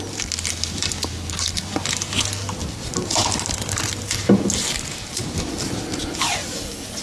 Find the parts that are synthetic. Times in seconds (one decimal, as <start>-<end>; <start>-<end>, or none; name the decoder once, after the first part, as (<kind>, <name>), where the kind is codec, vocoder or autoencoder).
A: none